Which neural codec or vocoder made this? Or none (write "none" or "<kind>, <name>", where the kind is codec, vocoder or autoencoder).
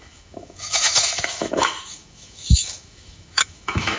autoencoder, DAC-VAE